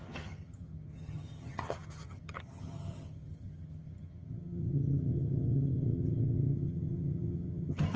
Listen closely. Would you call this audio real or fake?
fake